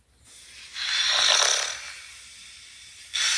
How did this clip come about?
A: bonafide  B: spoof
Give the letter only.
A